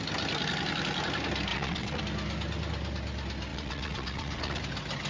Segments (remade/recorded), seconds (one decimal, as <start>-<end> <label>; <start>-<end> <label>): 0.0-1.5 recorded; 1.5-2.0 remade; 2.0-3.5 recorded; 3.5-4.6 remade; 4.6-5.1 recorded